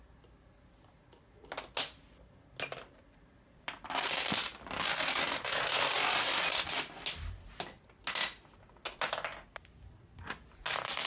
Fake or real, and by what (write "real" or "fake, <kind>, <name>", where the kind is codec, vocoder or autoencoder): real